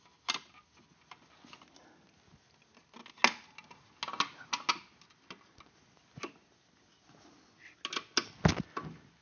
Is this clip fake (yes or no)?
no